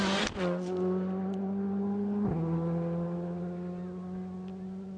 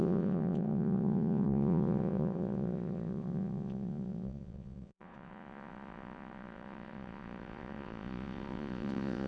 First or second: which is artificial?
second